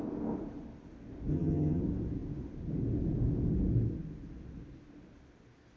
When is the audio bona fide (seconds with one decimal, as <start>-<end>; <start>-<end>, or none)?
0.0-1.3; 1.8-5.8